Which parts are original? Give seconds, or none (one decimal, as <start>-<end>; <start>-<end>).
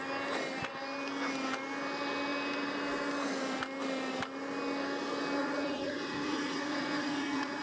0.0-5.4